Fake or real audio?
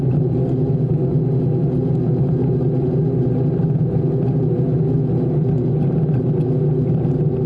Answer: real